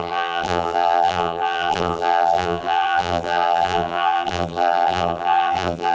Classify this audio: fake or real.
fake